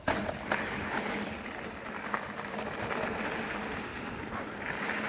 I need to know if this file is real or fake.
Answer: real